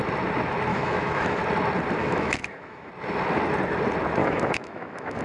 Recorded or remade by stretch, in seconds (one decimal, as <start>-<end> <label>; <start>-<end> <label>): 0.0-0.7 recorded; 0.7-1.4 remade; 1.4-2.0 recorded; 2.0-2.9 remade; 2.9-4.2 recorded; 4.2-5.2 remade